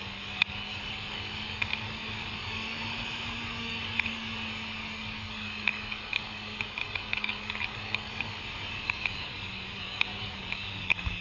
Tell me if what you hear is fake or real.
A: fake